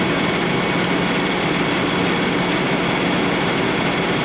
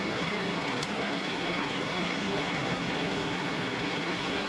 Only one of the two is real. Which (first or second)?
first